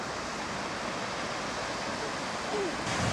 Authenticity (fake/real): real